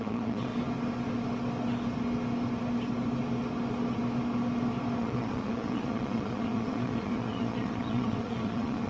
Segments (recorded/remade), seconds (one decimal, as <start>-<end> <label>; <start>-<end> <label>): 0.0-0.5 remade; 0.5-5.0 recorded; 5.0-8.9 remade